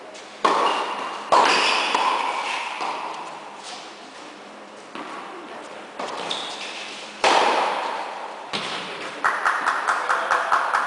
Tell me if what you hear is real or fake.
fake